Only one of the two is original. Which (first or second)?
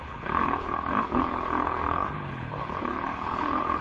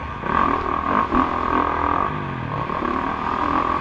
second